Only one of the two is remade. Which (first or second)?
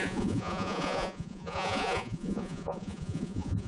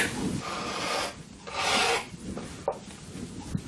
first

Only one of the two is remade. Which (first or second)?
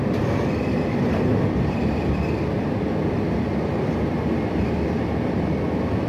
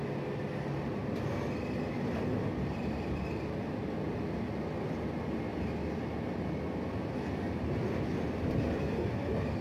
first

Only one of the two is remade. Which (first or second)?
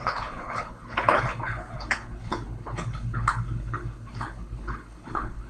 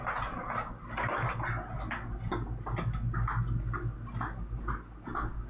first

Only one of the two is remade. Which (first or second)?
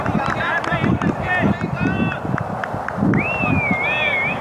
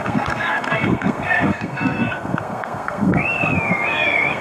second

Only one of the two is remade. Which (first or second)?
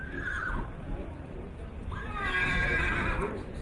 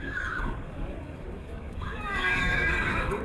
second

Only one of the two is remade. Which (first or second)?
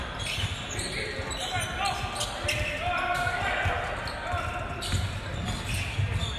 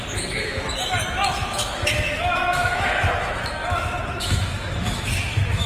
second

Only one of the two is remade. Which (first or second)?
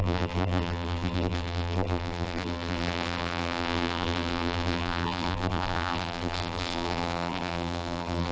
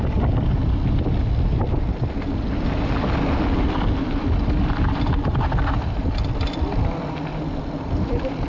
first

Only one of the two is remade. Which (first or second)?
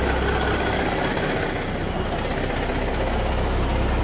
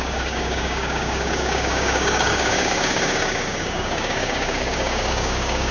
second